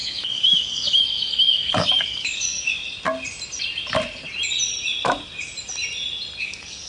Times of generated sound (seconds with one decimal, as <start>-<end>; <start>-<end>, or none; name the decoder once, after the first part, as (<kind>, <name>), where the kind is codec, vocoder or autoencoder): 0.0-2.8 (codec, DAC); 6.4-6.9